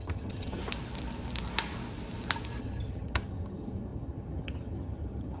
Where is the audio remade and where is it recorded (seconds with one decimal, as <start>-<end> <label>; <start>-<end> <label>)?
0.0-0.6 remade; 0.6-2.6 recorded; 2.6-5.4 remade